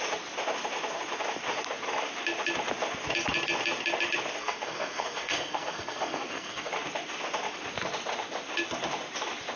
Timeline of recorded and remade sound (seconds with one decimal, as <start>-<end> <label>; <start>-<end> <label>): 0.0-4.4 recorded; 4.4-6.7 remade; 6.7-9.6 recorded

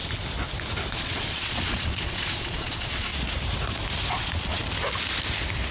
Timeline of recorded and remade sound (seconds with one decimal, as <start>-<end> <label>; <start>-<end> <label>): 0.0-0.9 recorded; 0.9-3.1 remade; 3.1-4.1 recorded; 4.1-4.6 remade; 4.6-5.7 recorded

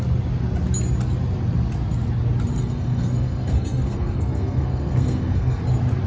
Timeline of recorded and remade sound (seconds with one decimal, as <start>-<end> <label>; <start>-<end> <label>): 0.0-2.6 recorded; 2.6-5.6 remade; 5.6-6.1 recorded

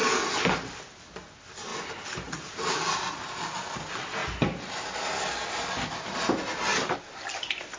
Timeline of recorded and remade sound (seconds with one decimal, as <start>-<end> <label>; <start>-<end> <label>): 0.0-7.8 recorded

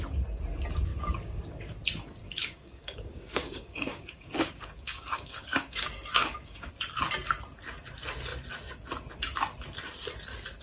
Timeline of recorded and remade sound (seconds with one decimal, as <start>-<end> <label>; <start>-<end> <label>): 0.0-0.9 recorded; 0.9-1.4 remade; 1.4-2.2 recorded; 2.2-6.7 remade; 6.7-10.6 recorded

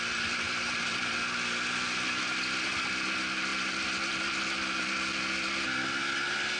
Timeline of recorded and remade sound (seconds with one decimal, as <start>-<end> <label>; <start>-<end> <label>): 0.0-6.6 recorded

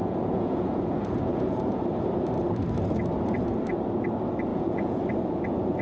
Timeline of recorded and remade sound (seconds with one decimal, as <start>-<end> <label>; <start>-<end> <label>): 0.0-1.8 remade; 1.8-4.5 recorded; 4.5-5.0 remade; 5.0-5.8 recorded